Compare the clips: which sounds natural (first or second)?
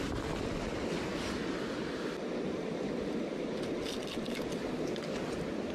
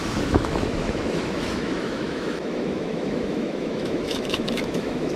first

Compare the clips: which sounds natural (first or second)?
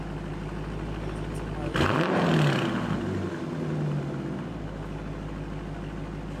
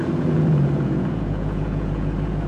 first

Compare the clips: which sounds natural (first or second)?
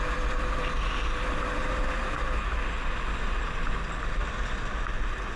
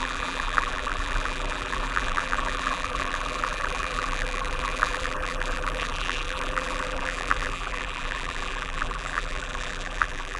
first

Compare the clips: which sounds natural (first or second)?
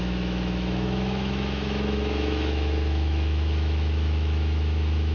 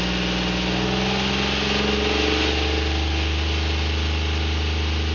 second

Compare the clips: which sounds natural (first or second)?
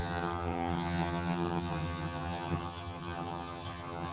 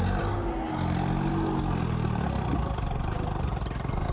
second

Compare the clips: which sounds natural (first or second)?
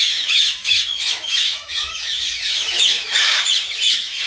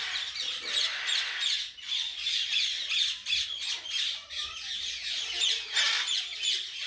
second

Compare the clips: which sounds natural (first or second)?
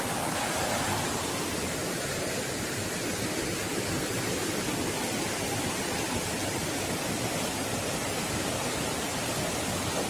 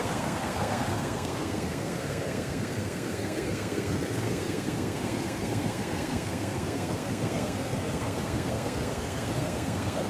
first